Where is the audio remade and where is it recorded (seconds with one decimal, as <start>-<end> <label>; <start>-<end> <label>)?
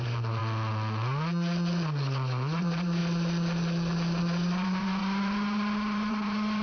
0.0-0.4 remade; 0.4-2.6 recorded; 2.6-3.0 remade; 3.0-4.2 recorded; 4.2-6.6 remade